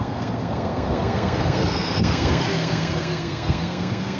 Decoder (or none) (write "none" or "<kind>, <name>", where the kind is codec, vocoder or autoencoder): codec, SNAC